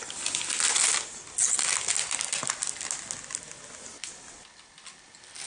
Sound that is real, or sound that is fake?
real